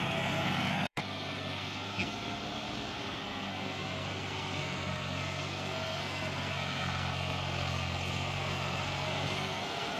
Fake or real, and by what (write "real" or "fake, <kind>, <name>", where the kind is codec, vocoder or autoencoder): fake, codec, SNAC